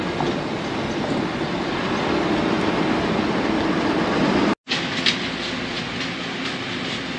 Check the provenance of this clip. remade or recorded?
recorded